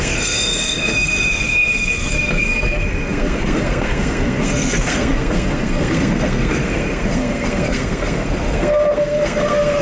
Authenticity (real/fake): fake